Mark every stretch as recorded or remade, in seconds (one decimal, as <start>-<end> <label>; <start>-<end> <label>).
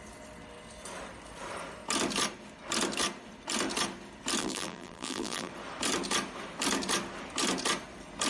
0.0-4.4 recorded; 4.4-5.5 remade; 5.5-8.3 recorded